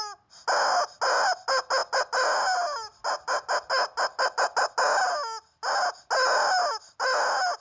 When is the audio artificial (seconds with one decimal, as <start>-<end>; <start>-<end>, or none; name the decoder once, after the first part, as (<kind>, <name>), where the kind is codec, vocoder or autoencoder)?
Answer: none

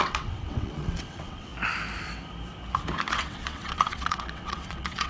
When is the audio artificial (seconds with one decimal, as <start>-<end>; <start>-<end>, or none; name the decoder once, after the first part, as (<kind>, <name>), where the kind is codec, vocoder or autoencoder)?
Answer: 0.0-1.5 (vocoder, WaveNeXt); 3.1-5.1

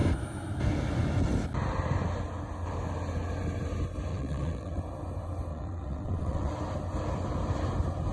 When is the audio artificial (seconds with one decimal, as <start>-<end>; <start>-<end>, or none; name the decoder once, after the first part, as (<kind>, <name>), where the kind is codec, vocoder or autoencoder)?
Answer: 4.1-4.8 (vocoder, WaveNeXt); 5.5-6.5

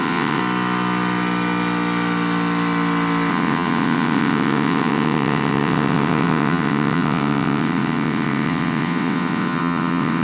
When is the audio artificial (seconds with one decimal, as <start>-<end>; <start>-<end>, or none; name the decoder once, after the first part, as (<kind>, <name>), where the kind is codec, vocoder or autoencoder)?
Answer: 0.0-0.4 (vocoder, WaveNeXt); 3.3-10.2

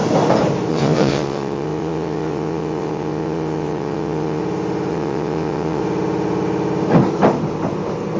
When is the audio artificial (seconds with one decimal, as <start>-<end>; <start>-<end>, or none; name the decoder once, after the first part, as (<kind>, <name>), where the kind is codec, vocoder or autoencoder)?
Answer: 0.7-4.4 (vocoder, WaveNeXt); 4.9-5.8

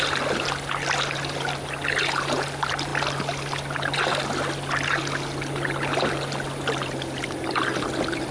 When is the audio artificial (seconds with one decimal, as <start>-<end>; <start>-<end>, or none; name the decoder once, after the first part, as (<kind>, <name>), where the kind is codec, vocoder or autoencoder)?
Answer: none

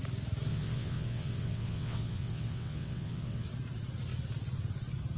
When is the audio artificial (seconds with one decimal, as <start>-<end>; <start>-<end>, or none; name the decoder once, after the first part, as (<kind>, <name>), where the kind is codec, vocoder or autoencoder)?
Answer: 0.5-3.5 (vocoder, WaveNeXt)

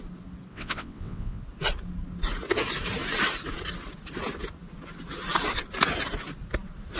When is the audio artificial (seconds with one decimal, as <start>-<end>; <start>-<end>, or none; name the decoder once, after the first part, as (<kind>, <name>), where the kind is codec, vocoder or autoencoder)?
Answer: 0.5-1.4 (vocoder, WaveNeXt)